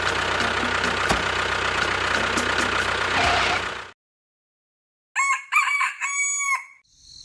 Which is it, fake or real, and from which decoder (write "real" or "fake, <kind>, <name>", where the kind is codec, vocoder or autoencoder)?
real